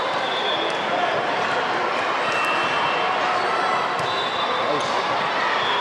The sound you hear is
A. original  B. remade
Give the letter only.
A